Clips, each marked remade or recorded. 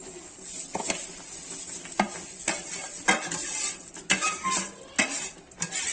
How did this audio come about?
recorded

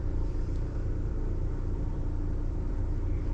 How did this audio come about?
remade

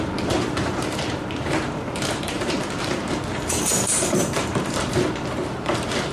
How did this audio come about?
remade